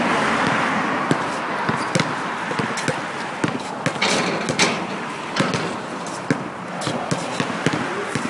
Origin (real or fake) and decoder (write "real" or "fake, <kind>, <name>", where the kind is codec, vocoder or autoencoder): real